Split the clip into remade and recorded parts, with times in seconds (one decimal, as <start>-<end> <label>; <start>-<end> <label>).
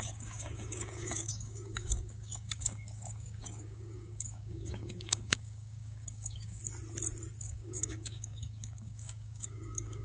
0.0-6.6 remade; 6.6-7.4 recorded; 7.4-10.0 remade